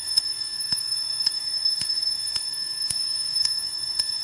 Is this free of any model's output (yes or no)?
no